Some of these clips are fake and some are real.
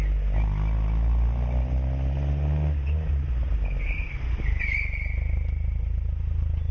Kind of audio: real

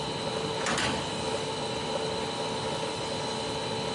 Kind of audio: real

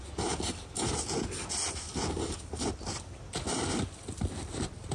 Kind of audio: real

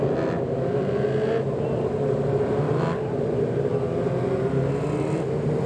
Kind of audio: real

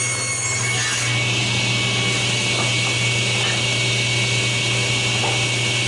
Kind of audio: real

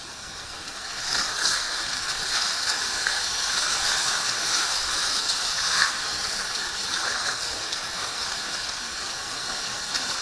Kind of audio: fake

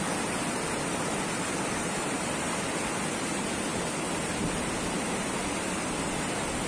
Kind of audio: real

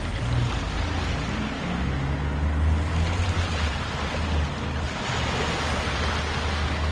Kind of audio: real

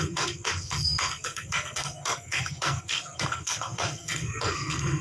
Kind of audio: fake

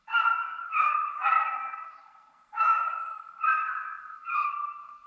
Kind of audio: fake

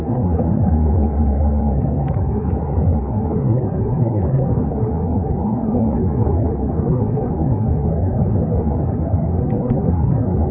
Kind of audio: fake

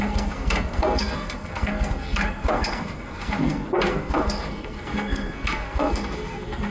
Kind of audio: fake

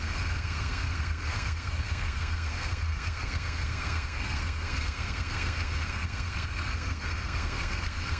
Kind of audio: fake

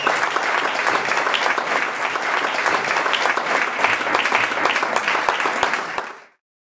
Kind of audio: real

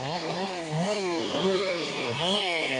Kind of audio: fake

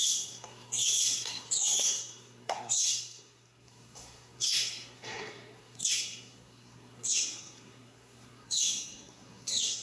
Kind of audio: fake